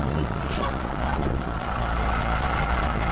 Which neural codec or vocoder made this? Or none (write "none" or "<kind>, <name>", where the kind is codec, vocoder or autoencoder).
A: vocoder, Vocos